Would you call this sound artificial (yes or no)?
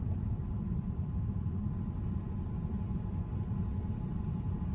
no